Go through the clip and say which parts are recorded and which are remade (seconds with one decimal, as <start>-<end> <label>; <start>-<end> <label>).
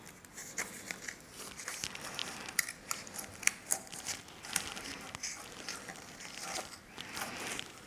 0.0-7.9 recorded